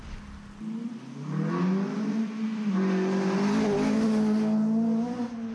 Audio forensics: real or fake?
real